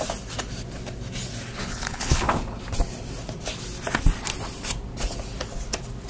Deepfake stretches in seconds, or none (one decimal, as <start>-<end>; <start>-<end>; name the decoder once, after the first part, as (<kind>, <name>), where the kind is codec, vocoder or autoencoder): 1.6-2.3 (codec, HILCodec)